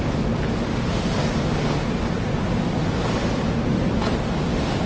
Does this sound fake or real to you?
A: real